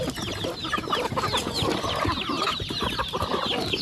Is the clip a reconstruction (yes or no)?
no